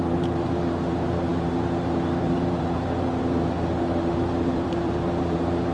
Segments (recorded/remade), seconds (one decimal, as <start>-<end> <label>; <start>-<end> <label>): 0.0-5.7 remade